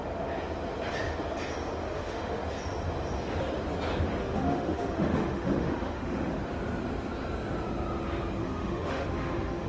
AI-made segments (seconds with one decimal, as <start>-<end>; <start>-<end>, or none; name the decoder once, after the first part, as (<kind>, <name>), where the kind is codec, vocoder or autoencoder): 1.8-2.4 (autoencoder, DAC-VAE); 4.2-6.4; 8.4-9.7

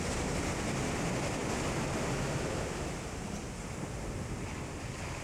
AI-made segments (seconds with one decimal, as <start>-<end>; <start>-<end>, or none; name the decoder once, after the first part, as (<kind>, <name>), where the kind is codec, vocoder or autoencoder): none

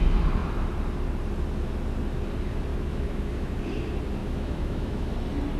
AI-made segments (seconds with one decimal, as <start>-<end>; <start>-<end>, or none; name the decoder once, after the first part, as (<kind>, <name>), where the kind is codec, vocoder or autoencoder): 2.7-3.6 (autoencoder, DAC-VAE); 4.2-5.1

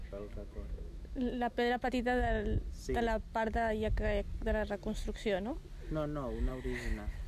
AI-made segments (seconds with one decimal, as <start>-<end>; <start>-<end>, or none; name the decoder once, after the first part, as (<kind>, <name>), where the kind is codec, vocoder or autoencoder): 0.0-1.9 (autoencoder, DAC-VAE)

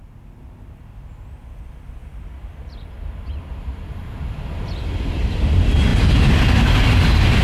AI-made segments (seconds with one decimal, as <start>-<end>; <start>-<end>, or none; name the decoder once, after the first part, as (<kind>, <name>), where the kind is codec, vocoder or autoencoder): none

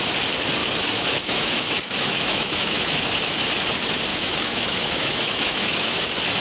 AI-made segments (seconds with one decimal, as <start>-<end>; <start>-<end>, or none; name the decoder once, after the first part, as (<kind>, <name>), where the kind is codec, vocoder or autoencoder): 0.6-3.4 (autoencoder, DAC-VAE); 4.1-6.0

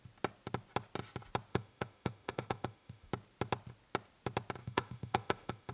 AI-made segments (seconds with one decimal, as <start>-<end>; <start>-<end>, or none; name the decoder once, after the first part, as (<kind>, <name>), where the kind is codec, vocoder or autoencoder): 1.5-3.1 (autoencoder, DAC-VAE); 4.6-5.7